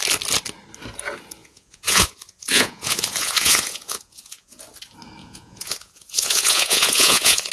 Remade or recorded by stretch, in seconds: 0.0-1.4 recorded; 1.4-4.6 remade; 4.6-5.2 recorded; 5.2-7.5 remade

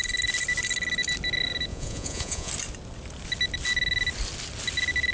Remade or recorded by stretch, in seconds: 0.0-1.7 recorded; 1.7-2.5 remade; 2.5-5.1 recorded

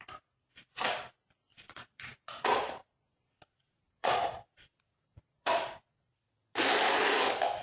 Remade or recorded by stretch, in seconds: 0.0-1.5 recorded; 1.5-6.1 remade; 6.1-7.6 recorded